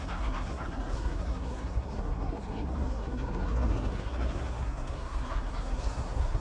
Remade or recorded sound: remade